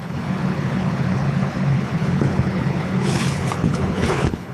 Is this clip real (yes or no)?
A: no